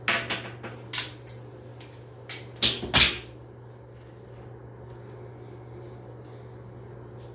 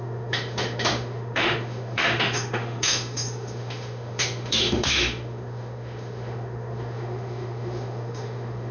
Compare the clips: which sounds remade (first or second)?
second